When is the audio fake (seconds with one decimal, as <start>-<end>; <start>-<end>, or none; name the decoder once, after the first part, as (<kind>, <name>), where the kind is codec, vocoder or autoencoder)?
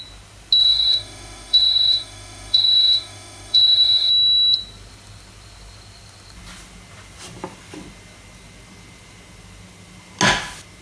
0.6-4.1 (autoencoder, DAC-VAE)